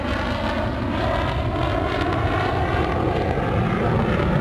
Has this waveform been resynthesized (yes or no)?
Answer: no